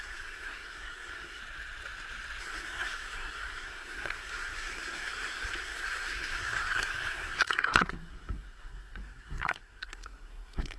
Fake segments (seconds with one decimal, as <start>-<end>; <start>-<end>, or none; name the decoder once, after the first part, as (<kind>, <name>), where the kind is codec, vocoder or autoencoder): 0.0-1.4 (codec, SNAC); 2.4-10.8